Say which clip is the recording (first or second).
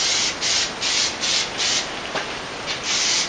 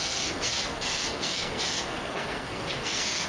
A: first